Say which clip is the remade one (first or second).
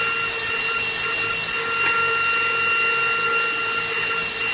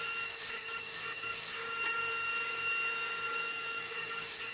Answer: second